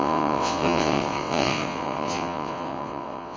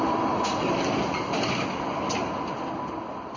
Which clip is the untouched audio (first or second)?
second